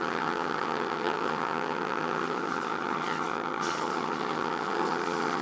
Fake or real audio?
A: fake